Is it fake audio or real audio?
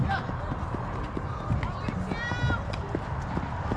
real